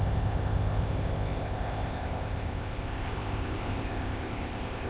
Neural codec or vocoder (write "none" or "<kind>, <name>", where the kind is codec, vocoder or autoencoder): codec, ZipCodec